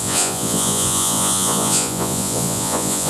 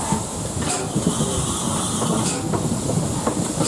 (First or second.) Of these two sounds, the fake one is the first